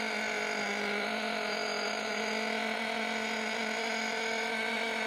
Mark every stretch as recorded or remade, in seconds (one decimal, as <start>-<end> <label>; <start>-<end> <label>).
0.0-5.1 recorded